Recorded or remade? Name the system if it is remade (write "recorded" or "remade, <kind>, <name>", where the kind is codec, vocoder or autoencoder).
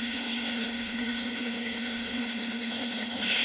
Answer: remade, codec, SNAC